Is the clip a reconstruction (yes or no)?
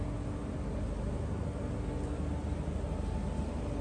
no